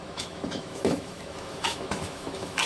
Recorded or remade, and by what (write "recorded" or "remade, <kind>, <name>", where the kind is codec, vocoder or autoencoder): remade, autoencoder, DAC-VAE